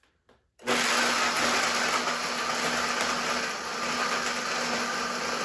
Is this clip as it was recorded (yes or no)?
yes